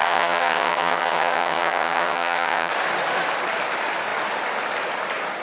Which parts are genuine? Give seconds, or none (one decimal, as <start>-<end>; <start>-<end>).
2.7-5.4